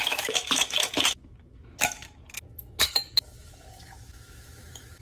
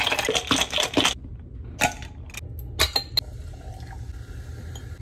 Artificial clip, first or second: first